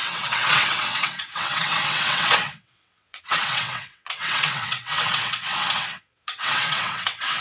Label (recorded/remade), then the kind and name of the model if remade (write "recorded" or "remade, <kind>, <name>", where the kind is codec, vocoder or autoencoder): remade, vocoder, WaveNeXt